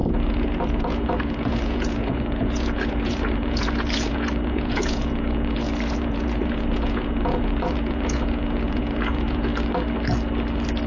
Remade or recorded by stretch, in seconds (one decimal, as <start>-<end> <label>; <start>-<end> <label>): 0.0-9.5 remade; 9.5-10.9 recorded